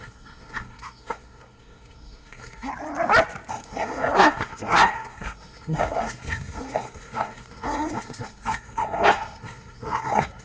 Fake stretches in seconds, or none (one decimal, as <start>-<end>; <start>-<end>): 0.0-2.7; 3.5-10.4